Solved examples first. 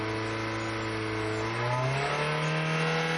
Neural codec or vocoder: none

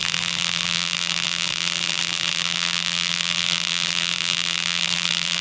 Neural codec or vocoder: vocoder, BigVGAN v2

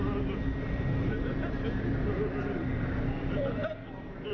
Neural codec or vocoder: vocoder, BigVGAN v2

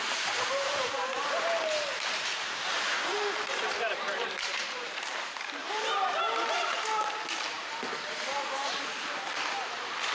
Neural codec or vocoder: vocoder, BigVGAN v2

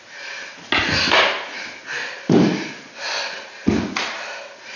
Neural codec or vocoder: none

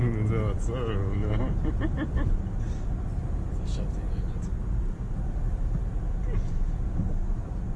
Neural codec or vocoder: none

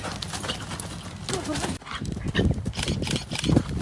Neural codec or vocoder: none